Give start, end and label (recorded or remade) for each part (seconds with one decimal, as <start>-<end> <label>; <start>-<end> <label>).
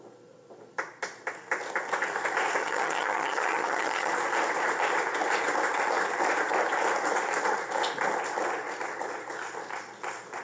0.0-2.6 recorded; 2.6-4.1 remade; 4.1-10.4 recorded